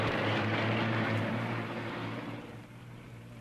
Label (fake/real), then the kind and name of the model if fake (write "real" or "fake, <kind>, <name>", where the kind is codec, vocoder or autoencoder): fake, vocoder, BigVGAN v2